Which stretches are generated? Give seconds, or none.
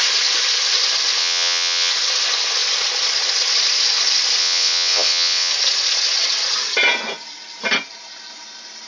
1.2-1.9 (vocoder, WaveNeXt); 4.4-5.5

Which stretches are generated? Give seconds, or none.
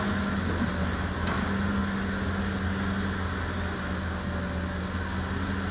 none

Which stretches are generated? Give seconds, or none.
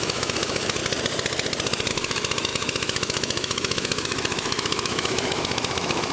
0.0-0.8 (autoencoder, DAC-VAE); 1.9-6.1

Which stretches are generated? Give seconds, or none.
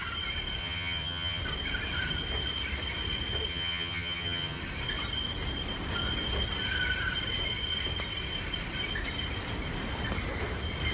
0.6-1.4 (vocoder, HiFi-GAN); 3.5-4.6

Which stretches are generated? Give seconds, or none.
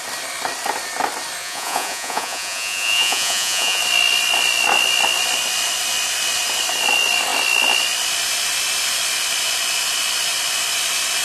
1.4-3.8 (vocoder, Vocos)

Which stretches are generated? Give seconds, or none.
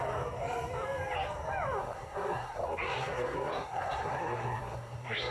1.8-5.3 (codec, SNAC)